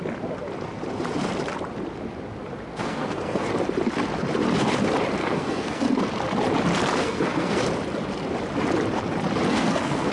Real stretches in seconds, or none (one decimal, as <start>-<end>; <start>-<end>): 0.0-2.7; 3.5-5.2; 5.8-7.0; 7.6-9.5